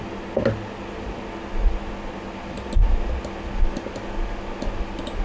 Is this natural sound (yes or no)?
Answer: yes